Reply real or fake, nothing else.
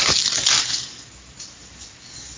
real